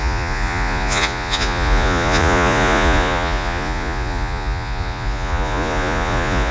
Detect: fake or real fake